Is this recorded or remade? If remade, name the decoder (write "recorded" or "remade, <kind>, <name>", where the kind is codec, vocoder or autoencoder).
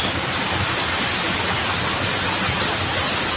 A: recorded